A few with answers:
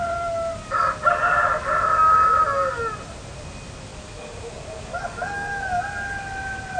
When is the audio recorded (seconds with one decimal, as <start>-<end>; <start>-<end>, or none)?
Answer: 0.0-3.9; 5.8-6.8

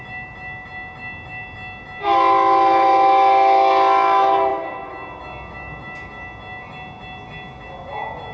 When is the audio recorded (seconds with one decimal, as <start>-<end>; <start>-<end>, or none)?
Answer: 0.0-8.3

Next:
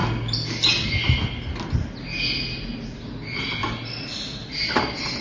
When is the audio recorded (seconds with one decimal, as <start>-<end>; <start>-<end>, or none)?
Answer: 0.0-5.2

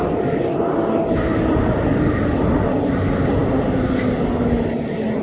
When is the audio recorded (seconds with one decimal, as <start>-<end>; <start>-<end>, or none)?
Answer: 0.0-5.2

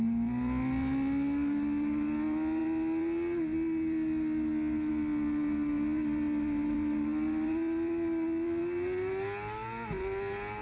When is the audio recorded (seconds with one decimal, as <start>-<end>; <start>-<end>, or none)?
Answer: 0.0-10.6

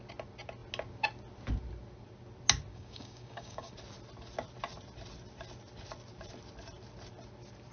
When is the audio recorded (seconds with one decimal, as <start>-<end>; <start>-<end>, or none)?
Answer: 0.0-2.7; 3.7-7.7

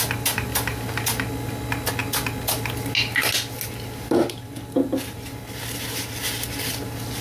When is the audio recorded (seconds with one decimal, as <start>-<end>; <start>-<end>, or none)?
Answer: 0.0-7.2

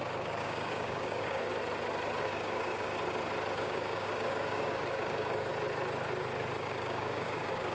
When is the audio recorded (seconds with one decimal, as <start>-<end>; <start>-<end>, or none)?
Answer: 1.5-2.2; 2.9-3.5; 5.5-6.6